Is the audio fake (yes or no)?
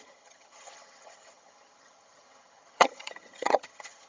yes